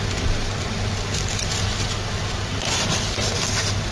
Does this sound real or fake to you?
real